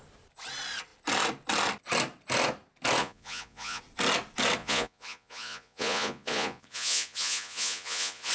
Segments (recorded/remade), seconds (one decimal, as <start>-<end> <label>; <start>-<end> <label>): 0.0-3.0 recorded; 3.0-3.8 remade; 3.8-4.6 recorded; 4.6-8.3 remade